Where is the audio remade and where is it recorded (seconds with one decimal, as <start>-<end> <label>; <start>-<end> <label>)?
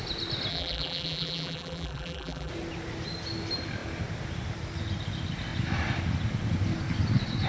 0.0-0.5 recorded; 0.5-2.5 remade; 2.5-7.5 recorded